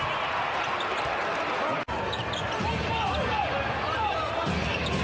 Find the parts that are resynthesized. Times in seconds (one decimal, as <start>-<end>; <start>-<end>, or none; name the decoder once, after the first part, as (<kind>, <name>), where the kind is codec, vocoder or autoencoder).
none